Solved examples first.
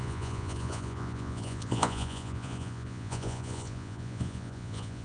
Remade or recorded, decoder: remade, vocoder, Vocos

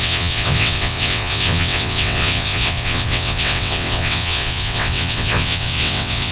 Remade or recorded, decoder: remade, vocoder, WaveNeXt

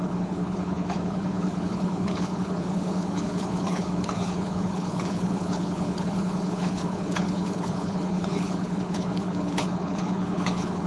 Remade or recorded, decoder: remade, codec, HILCodec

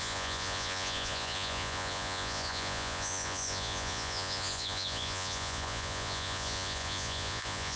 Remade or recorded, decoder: remade, vocoder, Vocos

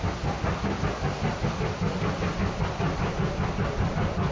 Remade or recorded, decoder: recorded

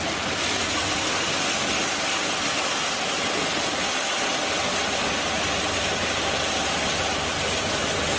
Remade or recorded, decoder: recorded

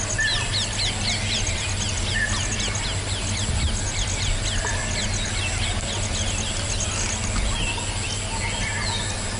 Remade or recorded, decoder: recorded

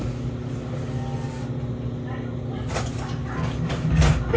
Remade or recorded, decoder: recorded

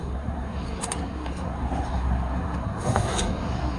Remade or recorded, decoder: remade, codec, SNAC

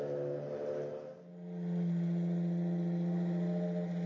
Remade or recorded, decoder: recorded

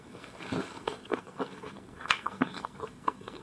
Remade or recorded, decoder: remade, codec, SNAC